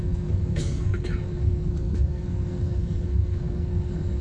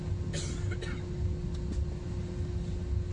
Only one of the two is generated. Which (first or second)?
first